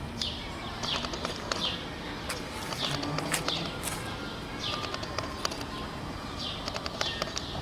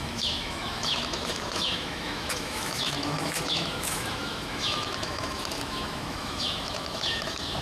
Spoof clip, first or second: second